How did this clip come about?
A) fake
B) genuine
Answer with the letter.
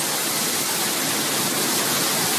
B